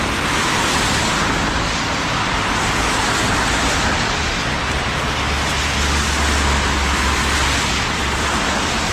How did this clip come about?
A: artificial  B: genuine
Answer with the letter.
B